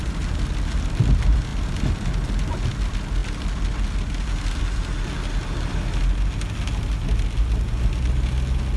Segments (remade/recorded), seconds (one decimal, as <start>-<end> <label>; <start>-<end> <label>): 0.0-8.8 recorded